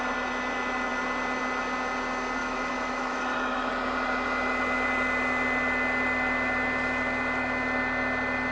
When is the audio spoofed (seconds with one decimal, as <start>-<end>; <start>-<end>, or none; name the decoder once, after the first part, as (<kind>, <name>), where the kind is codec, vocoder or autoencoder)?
2.4-3.7 (autoencoder, DAC-VAE)